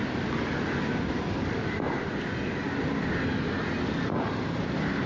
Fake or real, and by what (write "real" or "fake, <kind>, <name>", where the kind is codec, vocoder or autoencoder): real